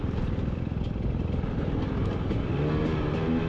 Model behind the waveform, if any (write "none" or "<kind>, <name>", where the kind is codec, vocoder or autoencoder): none